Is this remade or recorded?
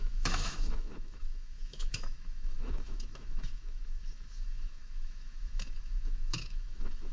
remade